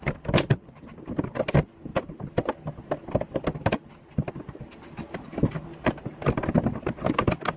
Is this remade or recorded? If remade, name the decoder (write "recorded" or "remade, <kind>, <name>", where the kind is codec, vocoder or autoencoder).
recorded